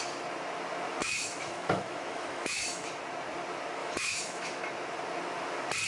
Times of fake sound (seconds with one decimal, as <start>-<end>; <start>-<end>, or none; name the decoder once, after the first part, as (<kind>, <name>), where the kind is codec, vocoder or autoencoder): 1.0-2.9 (autoencoder, DAC-VAE); 3.8-4.6